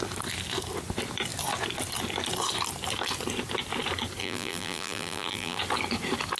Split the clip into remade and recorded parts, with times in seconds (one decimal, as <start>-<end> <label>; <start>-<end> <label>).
0.0-4.2 recorded; 4.2-5.6 remade; 5.6-6.4 recorded